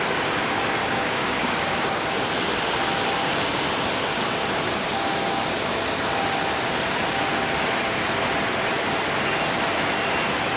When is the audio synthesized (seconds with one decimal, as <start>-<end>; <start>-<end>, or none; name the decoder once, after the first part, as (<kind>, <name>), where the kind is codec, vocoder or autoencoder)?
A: 0.8-2.1 (codec, DAC)